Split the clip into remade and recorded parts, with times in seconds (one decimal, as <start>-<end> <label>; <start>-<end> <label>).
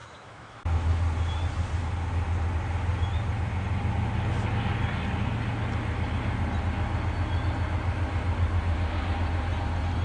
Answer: 0.0-1.0 remade; 1.0-10.0 recorded